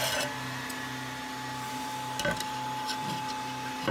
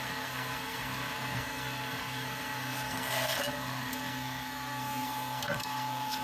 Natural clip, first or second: first